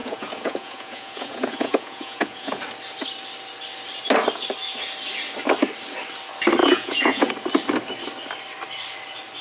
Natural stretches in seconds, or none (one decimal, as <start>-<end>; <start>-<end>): 2.6-6.6; 7.3-9.4